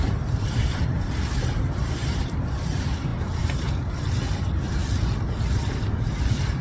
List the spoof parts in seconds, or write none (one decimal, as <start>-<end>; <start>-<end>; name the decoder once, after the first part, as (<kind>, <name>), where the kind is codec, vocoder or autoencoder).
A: 0.0-4.8 (vocoder, BigVGAN v2); 5.4-6.6